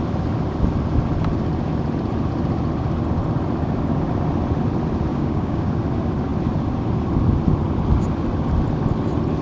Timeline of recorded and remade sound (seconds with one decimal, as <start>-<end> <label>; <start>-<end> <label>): 0.0-5.1 recorded; 5.1-5.7 remade; 5.7-9.4 recorded